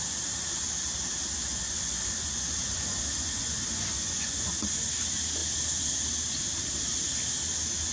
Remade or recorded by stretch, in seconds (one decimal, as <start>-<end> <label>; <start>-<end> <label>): 0.0-1.5 recorded; 1.5-4.5 remade; 4.5-7.9 recorded